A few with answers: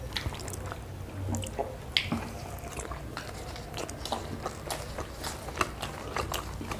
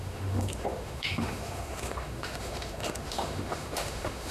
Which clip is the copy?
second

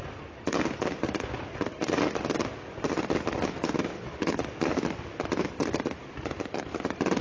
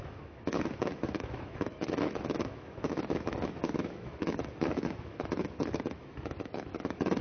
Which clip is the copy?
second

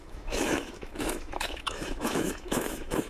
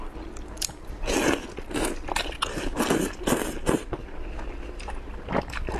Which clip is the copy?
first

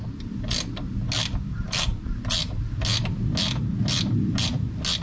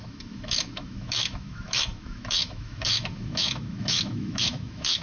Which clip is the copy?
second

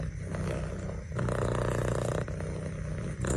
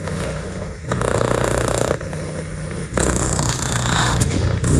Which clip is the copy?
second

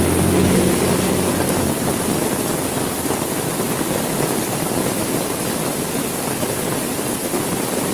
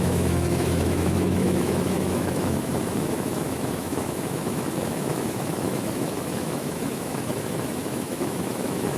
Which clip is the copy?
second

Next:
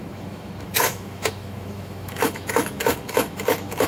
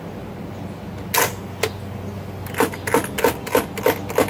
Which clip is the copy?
first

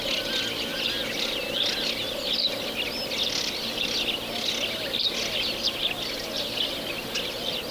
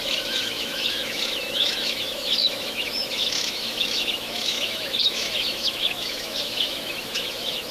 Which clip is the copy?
second